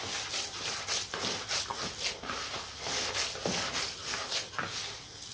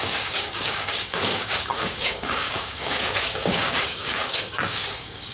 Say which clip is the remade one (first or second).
second